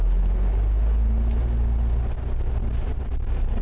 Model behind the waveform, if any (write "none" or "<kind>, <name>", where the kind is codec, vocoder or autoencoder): none